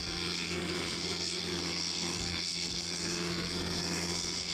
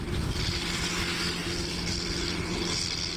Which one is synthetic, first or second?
first